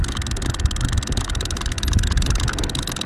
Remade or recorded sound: recorded